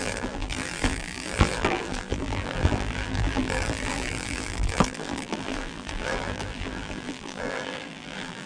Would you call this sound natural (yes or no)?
no